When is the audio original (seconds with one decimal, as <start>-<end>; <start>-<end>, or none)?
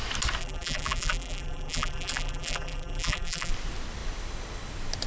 0.0-0.4; 3.5-5.1